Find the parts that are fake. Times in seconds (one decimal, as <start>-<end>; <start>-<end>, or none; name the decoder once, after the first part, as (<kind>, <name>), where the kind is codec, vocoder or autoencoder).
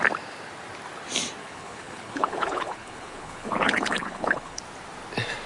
1.4-4.6 (codec, HILCodec)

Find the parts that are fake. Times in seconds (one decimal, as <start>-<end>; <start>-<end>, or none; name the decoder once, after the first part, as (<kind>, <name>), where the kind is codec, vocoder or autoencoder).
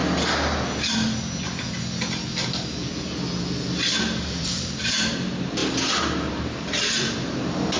4.3-5.6 (vocoder, BigVGAN v2); 6.3-7.8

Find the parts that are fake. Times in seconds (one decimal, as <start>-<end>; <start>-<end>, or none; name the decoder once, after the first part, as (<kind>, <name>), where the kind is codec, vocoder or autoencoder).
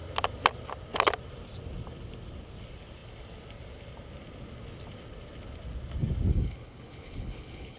6.3-7.8 (codec, HILCodec)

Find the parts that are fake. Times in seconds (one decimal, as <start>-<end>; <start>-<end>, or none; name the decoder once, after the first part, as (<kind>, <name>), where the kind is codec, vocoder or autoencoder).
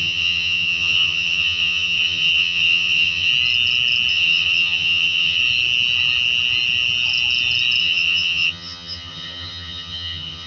0.0-3.3 (vocoder, HiFi-GAN); 4.1-5.4; 7.8-10.5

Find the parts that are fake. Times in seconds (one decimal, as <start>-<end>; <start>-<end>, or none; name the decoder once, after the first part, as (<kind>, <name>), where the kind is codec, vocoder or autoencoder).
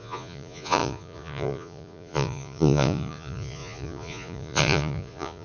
0.0-5.4 (vocoder, Vocos)